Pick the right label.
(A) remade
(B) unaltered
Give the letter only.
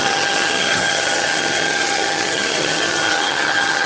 A